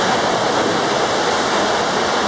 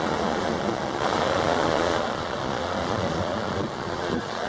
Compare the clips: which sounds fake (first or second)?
second